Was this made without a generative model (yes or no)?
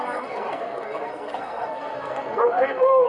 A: no